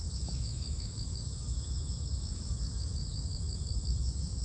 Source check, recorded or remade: remade